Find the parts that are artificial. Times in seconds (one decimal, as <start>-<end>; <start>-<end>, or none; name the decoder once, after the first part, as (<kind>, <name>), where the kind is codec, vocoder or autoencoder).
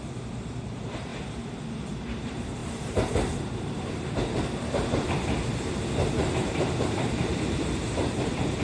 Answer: 0.0-1.1 (vocoder, BigVGAN v2); 1.8-8.6